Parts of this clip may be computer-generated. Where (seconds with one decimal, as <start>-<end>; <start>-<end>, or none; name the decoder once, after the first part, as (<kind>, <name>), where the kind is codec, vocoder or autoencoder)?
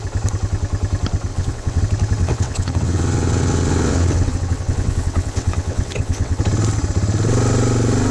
1.3-1.8 (vocoder, WaveNeXt); 2.2-6.4